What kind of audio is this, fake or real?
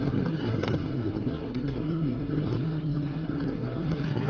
fake